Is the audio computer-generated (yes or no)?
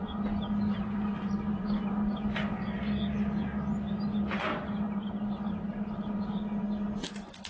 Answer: no